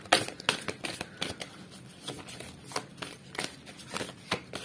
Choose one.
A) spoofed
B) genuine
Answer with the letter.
B